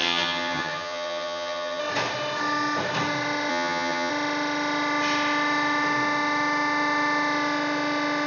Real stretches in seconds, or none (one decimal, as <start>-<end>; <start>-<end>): 1.8-3.5; 4.1-8.3